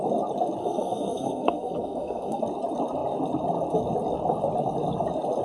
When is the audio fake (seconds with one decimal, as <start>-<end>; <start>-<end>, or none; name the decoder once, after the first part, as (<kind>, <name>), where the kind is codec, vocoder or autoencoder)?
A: 0.6-2.4 (codec, SNAC)